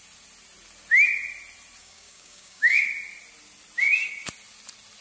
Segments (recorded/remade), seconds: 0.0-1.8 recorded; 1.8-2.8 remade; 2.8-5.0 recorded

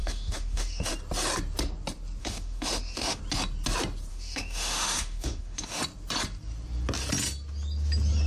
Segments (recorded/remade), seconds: 0.0-0.9 remade; 0.9-2.2 recorded; 2.2-3.2 remade; 3.2-4.1 recorded; 4.1-5.8 remade; 5.8-8.3 recorded

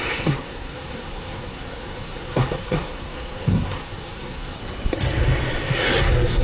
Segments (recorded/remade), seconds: 0.0-4.6 remade; 4.6-5.7 recorded; 5.7-6.4 remade

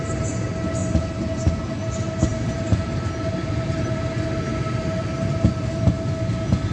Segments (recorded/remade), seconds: 0.0-6.7 recorded

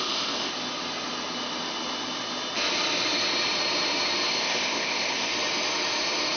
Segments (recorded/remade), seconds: 0.0-0.5 remade; 0.5-4.3 recorded; 4.3-5.3 remade; 5.3-6.4 recorded

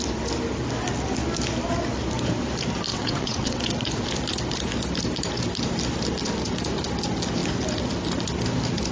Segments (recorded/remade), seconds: 0.0-2.9 recorded; 2.9-3.6 remade; 3.6-8.9 recorded

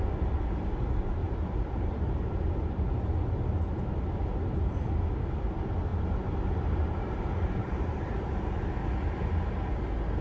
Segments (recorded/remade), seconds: 0.0-1.2 recorded; 1.2-2.9 remade; 2.9-5.9 recorded; 5.9-6.8 remade; 6.8-7.3 recorded; 7.3-8.6 remade; 8.6-10.2 recorded

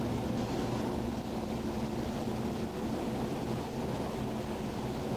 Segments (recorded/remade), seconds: 0.0-2.7 recorded; 2.7-3.8 remade; 3.8-5.2 recorded